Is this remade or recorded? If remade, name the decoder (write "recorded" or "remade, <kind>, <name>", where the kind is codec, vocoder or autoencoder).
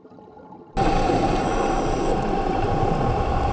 recorded